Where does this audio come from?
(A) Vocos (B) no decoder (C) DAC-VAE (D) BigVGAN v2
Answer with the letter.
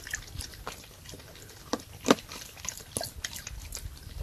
B